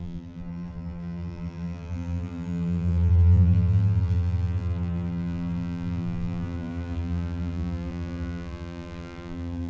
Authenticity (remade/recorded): remade